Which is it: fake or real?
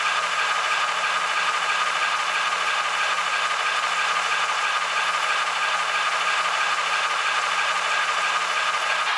real